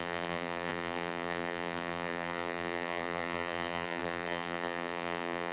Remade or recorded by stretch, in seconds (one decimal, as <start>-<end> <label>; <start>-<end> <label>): 0.0-5.5 remade